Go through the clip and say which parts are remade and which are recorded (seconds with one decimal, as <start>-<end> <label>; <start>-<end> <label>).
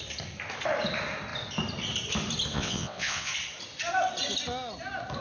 0.0-2.5 recorded; 2.5-3.3 remade; 3.3-5.2 recorded